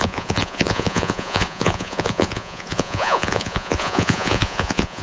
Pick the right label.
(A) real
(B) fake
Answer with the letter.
B